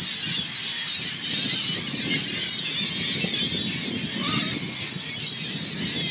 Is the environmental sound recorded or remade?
recorded